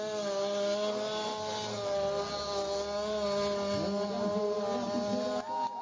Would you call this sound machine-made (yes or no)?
no